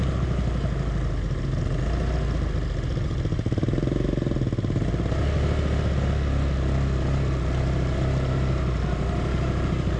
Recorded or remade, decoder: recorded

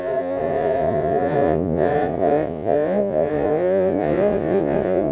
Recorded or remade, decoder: remade, vocoder, Vocos